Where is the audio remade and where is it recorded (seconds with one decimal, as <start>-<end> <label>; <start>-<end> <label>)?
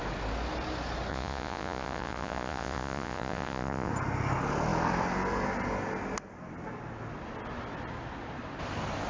0.0-1.1 recorded; 1.1-3.9 remade; 3.9-9.1 recorded